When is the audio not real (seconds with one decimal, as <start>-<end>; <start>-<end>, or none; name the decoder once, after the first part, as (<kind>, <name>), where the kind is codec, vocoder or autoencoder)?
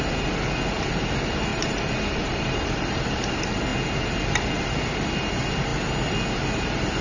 1.5-3.3 (vocoder, BigVGAN v2)